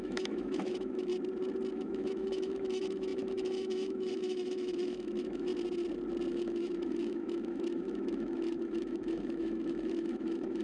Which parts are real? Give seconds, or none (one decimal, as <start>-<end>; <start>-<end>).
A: 1.1-1.7; 5.5-6.3